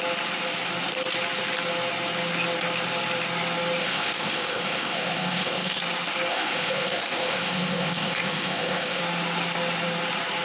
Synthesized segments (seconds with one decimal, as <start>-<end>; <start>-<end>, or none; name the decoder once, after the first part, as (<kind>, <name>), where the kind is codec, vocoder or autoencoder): 3.8-5.8 (codec, ZipCodec); 6.3-9.0